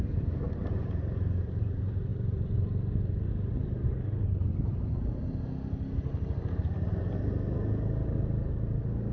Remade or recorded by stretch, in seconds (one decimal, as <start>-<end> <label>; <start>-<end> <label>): 0.0-2.1 recorded; 2.1-3.3 remade; 3.3-9.1 recorded